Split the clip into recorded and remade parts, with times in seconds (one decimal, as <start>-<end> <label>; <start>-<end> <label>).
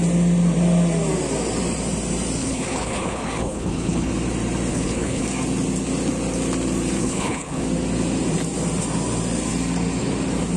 0.0-2.4 recorded; 2.4-4.1 remade; 4.1-4.7 recorded; 4.7-5.2 remade; 5.2-7.0 recorded; 7.0-7.6 remade; 7.6-10.6 recorded